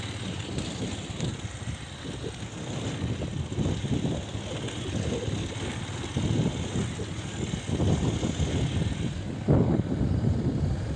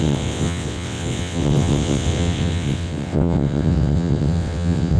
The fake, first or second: second